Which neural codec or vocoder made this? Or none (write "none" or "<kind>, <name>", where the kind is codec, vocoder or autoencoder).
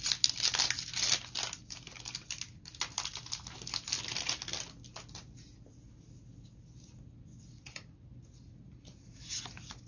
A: none